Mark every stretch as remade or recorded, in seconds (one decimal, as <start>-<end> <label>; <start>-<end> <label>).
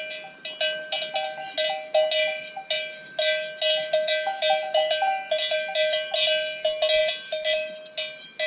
0.0-8.5 recorded